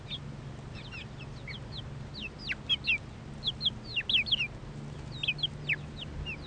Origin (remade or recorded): recorded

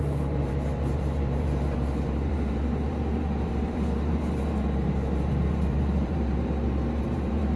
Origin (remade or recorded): remade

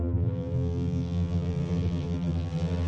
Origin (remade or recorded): remade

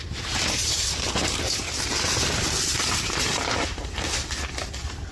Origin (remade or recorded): remade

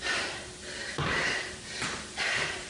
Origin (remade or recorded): remade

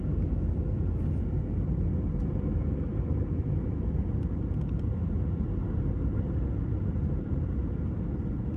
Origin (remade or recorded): recorded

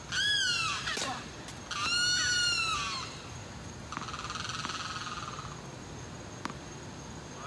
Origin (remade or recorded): recorded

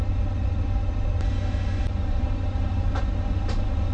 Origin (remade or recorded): recorded